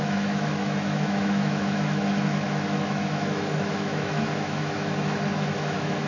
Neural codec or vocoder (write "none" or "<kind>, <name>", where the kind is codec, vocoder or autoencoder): autoencoder, DAC-VAE